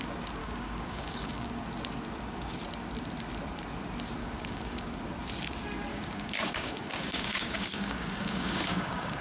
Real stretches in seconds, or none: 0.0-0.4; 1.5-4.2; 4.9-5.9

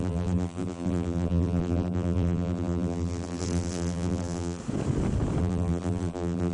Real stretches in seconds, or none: 4.6-5.4

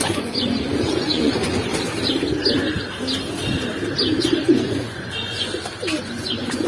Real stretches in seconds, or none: 1.7-4.2; 5.5-6.0